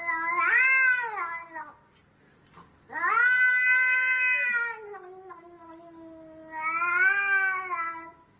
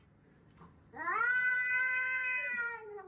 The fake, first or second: second